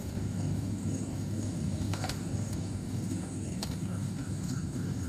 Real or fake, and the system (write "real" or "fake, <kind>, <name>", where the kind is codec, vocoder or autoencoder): fake, codec, DAC